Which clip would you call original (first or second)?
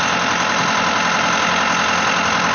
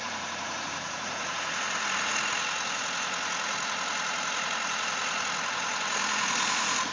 first